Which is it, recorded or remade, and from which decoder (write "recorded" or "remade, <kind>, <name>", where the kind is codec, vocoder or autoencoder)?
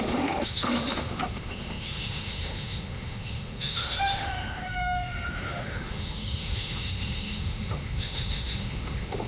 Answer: remade, autoencoder, DAC-VAE